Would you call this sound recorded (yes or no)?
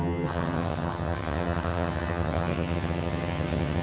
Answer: no